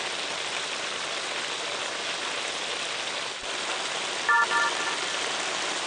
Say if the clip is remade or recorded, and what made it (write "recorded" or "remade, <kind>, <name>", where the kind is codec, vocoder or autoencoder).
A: recorded